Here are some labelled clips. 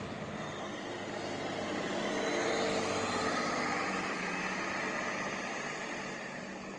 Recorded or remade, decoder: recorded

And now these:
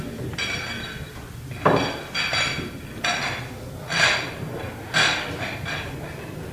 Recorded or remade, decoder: recorded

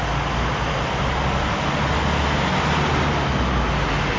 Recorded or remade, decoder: recorded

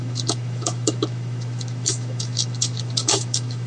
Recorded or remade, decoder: remade, autoencoder, DAC-VAE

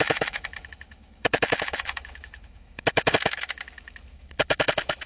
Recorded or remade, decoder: remade, autoencoder, DAC-VAE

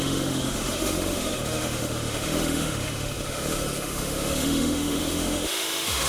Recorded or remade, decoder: remade, autoencoder, DAC-VAE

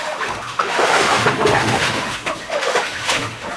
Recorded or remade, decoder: remade, autoencoder, DAC-VAE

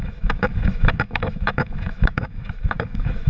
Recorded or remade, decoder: remade, autoencoder, DAC-VAE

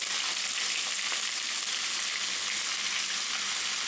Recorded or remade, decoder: recorded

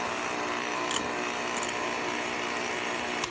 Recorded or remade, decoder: recorded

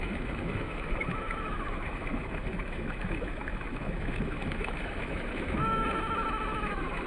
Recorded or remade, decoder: remade, autoencoder, DAC-VAE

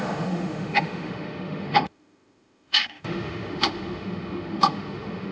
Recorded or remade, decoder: remade, autoencoder, DAC-VAE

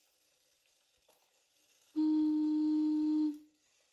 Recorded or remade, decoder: recorded